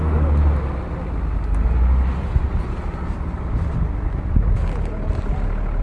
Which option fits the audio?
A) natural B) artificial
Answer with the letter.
A